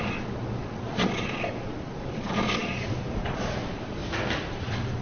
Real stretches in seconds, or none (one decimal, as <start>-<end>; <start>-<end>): 4.0-4.5